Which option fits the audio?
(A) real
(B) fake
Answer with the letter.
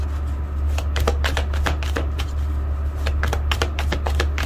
A